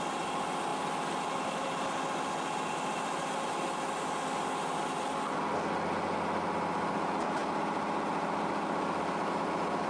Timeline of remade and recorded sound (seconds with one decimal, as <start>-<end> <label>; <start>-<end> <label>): 0.0-9.9 recorded